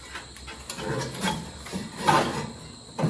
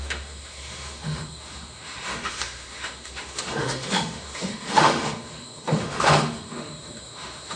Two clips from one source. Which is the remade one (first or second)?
second